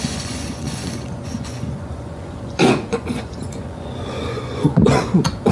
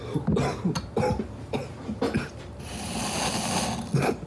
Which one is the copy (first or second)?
first